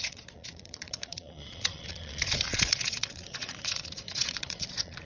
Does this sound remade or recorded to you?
remade